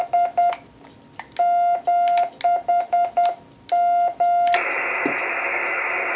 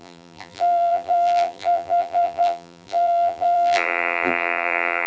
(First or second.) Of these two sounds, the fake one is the second